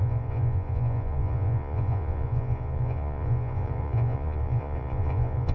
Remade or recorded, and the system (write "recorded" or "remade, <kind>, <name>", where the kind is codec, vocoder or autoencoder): remade, vocoder, Vocos